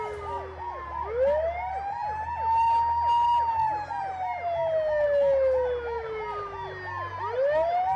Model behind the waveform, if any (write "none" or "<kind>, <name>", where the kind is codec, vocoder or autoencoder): none